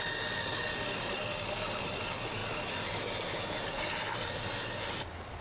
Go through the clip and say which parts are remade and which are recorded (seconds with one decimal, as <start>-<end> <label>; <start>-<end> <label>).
0.0-5.4 recorded